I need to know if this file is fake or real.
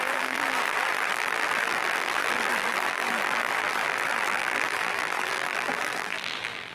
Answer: fake